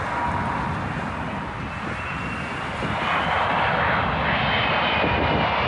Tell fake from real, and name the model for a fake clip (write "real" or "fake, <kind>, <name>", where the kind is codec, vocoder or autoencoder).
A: real